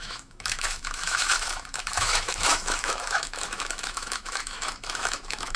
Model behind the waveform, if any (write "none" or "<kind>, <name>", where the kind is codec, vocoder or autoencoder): autoencoder, DAC-VAE